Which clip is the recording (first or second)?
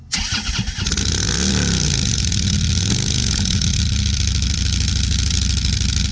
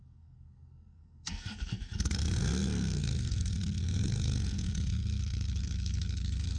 first